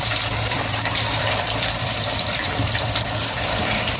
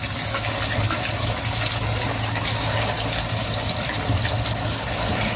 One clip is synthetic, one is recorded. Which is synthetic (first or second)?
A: first